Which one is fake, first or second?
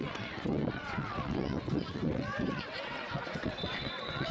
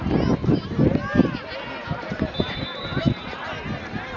first